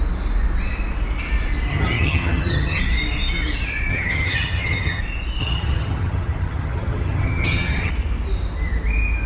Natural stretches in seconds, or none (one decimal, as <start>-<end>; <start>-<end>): 0.0-1.7; 2.8-3.9; 5.0-5.4; 7.9-9.3